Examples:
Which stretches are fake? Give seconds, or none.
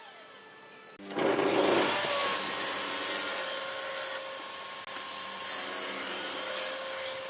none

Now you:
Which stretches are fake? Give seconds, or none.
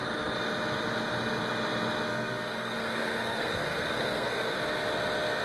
2.1-4.5 (codec, SNAC)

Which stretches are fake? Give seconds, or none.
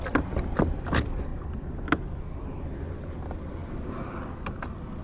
none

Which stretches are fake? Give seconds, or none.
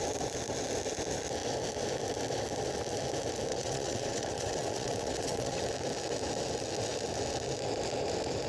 3.5-5.6 (vocoder, WaveNeXt)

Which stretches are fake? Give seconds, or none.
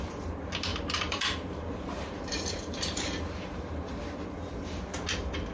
0.7-3.9 (vocoder, BigVGAN v2)